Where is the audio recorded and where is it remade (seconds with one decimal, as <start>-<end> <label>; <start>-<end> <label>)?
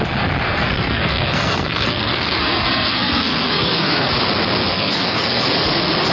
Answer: 0.0-0.4 recorded; 0.4-4.1 remade; 4.1-4.6 recorded; 4.6-5.4 remade; 5.4-6.1 recorded